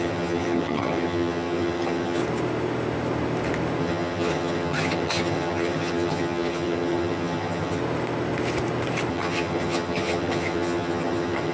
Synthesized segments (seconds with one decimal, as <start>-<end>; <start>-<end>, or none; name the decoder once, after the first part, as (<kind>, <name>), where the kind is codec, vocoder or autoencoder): 0.0-2.2 (vocoder, HiFi-GAN); 3.8-7.8; 9.1-11.5